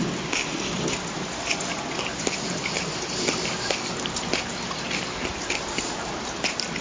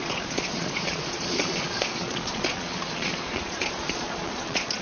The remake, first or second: second